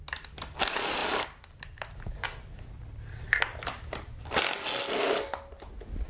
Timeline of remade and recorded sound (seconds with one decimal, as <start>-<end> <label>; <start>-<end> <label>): 0.0-6.1 recorded